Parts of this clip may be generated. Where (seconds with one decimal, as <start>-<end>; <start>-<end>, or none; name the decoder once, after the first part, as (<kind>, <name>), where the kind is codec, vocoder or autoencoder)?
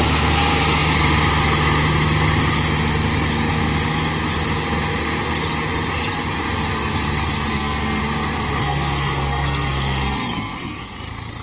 7.5-8.0 (codec, SNAC); 8.6-10.8